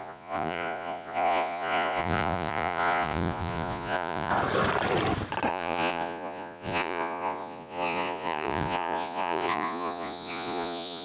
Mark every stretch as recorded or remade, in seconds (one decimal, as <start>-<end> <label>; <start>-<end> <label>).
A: 0.0-4.3 remade; 4.3-5.5 recorded; 5.5-11.0 remade